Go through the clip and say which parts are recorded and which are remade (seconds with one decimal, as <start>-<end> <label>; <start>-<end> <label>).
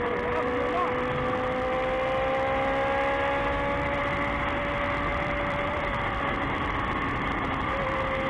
0.0-5.1 recorded; 5.1-6.2 remade; 6.2-8.3 recorded